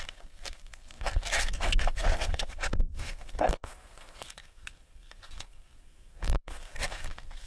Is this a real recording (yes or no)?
no